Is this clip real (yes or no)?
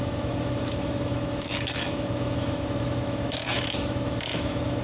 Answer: no